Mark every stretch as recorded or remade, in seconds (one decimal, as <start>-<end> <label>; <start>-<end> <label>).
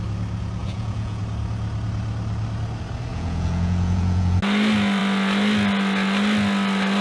0.0-0.6 recorded; 0.6-1.2 remade; 1.2-3.1 recorded; 3.1-4.4 remade; 4.4-7.0 recorded